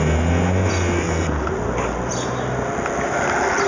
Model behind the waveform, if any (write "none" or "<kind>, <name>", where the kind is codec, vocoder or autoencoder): none